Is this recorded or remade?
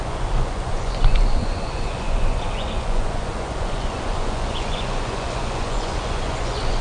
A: remade